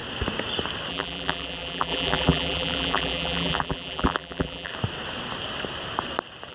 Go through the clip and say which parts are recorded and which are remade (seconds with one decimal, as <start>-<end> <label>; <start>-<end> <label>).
0.0-0.9 recorded; 0.9-4.7 remade; 4.7-6.5 recorded